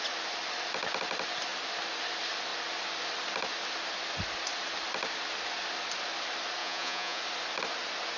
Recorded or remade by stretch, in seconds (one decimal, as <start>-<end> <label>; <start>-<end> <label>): 0.0-6.6 recorded; 6.6-7.2 remade; 7.2-8.2 recorded

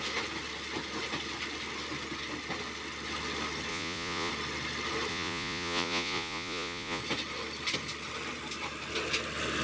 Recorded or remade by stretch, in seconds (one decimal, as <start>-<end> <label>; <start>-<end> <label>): 0.0-3.7 recorded; 3.7-4.3 remade; 4.3-5.1 recorded; 5.1-7.0 remade; 7.0-9.6 recorded

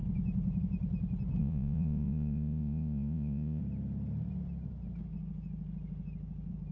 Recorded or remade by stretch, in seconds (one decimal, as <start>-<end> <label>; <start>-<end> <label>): 0.0-1.4 recorded; 1.4-3.6 remade; 3.6-6.7 recorded

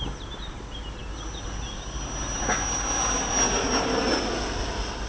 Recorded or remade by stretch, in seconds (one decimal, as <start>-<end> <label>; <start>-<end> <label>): 0.0-5.1 recorded

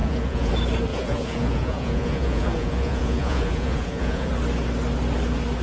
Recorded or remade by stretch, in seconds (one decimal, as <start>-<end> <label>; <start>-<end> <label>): 0.0-0.5 remade; 0.5-0.9 recorded; 0.9-4.3 remade; 4.3-5.6 recorded

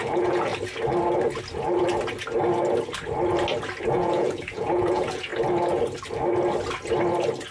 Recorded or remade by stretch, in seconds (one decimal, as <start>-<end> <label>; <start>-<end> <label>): 0.0-0.5 remade; 0.5-3.9 recorded; 3.9-5.3 remade; 5.3-7.5 recorded